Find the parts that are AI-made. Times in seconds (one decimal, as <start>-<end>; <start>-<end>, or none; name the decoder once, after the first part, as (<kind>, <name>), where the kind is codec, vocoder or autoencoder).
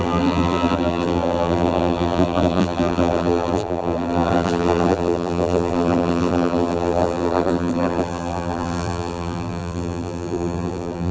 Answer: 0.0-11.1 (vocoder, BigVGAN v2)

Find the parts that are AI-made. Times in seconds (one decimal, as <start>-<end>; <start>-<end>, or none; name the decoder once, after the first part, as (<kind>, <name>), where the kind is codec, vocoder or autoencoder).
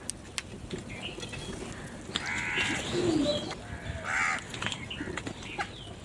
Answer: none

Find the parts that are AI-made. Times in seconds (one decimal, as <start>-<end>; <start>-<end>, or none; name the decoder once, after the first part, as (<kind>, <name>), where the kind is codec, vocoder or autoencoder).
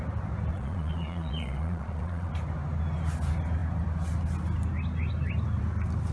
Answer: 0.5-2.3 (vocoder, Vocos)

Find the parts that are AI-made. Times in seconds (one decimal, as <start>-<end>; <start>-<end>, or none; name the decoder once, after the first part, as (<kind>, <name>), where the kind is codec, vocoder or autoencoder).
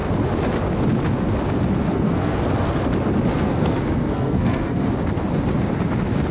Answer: 1.8-2.4 (codec, SNAC); 3.3-4.9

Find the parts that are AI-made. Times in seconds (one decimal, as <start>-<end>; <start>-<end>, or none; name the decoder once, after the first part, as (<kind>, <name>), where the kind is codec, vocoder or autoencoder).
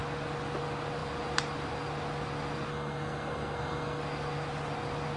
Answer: 2.7-4.0 (codec, SNAC)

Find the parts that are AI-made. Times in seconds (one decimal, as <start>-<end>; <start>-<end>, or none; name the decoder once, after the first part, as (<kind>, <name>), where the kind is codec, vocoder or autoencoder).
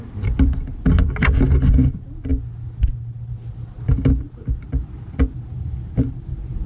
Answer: none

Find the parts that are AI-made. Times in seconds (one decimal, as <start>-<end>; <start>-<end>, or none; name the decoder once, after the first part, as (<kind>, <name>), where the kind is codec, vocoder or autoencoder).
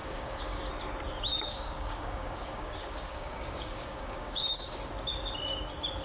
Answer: 0.0-0.7 (codec, DAC); 1.3-4.9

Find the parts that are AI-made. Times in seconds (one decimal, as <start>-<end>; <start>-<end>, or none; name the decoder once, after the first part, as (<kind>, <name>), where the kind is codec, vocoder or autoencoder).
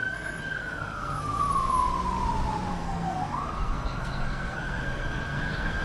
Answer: 0.0-1.4 (codec, SNAC); 2.7-5.8